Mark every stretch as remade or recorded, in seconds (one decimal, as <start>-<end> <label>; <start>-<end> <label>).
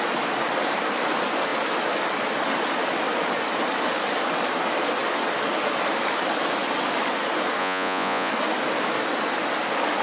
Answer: 0.0-7.6 recorded; 7.6-8.3 remade; 8.3-10.0 recorded